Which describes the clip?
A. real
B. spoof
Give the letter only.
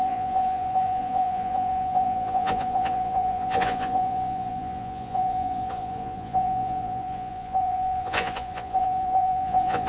B